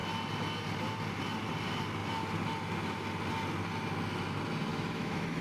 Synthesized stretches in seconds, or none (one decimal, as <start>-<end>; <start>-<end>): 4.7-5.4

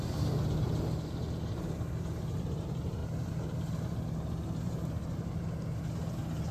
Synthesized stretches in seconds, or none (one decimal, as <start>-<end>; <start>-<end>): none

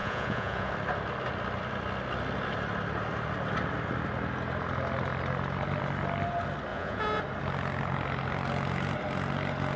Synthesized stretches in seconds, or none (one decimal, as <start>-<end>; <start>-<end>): 0.0-0.7; 6.7-7.2

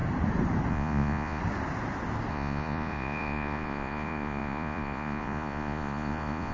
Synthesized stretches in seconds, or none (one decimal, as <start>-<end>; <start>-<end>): 0.7-1.4; 2.3-6.5

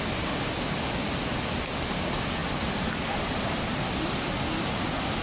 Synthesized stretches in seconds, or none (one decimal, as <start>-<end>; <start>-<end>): none

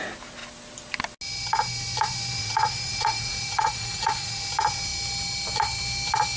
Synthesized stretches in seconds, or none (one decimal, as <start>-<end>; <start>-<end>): 2.4-4.4

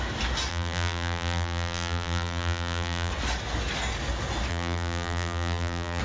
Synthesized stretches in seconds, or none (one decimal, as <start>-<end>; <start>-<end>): 0.5-3.1; 4.5-6.0

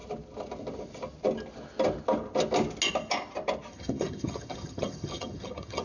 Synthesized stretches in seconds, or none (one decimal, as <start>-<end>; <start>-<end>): 3.7-5.8